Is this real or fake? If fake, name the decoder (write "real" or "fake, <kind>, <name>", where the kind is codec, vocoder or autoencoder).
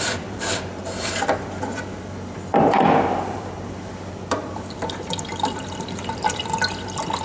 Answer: fake, vocoder, BigVGAN v2